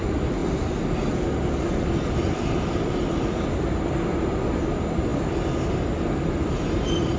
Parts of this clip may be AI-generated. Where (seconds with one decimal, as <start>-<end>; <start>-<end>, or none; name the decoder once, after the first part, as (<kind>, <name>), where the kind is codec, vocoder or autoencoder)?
none

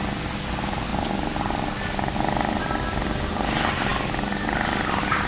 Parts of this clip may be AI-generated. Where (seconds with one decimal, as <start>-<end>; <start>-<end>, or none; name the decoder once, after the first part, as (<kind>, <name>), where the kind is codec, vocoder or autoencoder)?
none

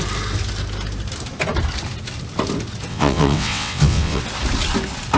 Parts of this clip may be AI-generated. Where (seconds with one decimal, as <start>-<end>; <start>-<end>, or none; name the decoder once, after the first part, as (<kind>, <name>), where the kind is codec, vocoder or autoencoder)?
2.9-4.2 (vocoder, WaveNeXt)

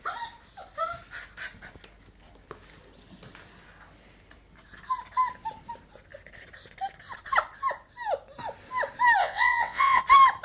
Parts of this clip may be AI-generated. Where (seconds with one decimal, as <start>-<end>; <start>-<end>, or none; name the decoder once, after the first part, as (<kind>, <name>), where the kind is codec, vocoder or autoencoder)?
9.2-10.0 (vocoder, WaveNeXt)

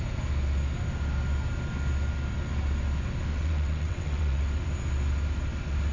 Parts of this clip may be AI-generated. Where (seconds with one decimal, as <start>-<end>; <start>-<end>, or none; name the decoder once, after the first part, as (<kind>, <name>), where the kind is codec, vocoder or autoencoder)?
3.3-4.4 (vocoder, WaveNeXt)

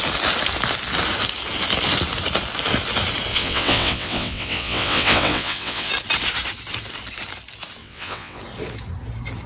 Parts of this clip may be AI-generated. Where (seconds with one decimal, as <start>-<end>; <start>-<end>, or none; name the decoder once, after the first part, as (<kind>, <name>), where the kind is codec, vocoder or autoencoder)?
3.3-5.9 (vocoder, WaveNeXt); 7.8-8.4